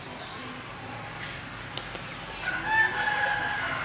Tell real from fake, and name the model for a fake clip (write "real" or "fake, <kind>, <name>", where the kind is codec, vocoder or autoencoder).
real